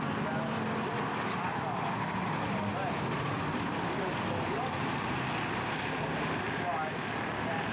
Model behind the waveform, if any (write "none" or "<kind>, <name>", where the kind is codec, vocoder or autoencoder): none